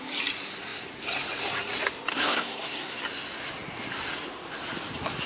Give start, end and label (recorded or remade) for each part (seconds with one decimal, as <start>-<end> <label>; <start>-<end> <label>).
0.0-2.1 recorded; 2.1-3.0 remade; 3.0-5.3 recorded